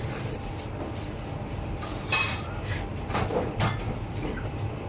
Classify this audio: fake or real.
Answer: real